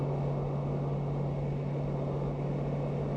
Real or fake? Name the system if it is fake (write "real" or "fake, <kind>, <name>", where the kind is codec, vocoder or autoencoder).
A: real